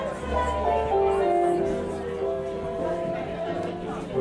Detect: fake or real real